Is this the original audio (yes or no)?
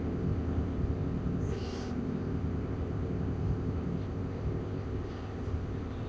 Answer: no